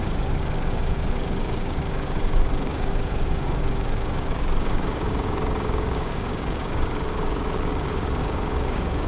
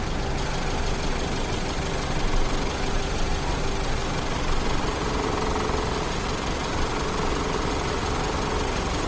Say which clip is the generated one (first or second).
first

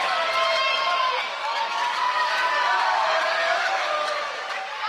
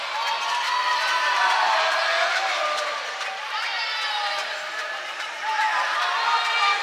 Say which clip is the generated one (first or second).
first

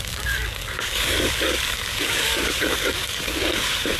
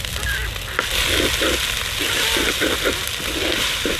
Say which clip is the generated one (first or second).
first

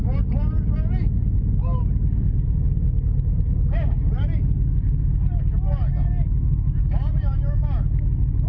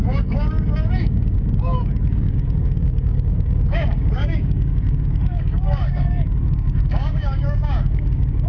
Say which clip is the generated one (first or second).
second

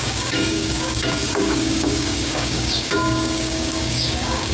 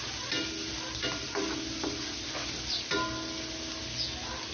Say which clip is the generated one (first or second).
first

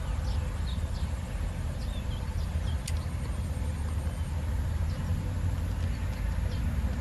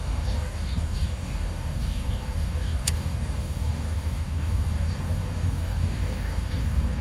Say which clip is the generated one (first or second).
second